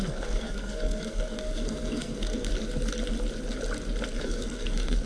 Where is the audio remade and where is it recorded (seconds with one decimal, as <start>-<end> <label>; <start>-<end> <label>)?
0.0-2.5 remade; 2.5-4.2 recorded; 4.2-5.1 remade